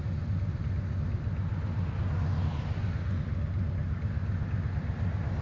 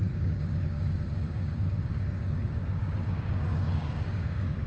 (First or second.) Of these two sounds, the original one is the first